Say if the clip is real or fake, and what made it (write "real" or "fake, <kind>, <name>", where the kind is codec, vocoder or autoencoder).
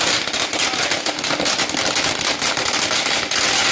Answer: real